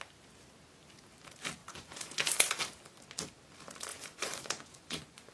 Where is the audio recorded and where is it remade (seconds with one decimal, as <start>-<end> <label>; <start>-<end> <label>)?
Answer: 0.0-1.6 recorded; 1.6-2.6 remade; 2.6-3.9 recorded; 3.9-5.3 remade